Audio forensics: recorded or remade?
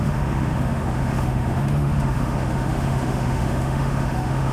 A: remade